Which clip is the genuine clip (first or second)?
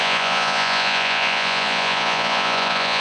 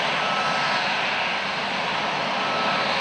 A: second